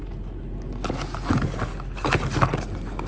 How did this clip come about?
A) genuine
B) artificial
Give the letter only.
A